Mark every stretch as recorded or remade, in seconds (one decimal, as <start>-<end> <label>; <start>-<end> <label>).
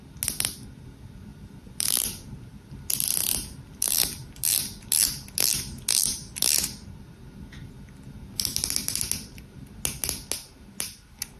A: 0.0-1.3 recorded; 1.3-4.8 remade; 4.8-11.4 recorded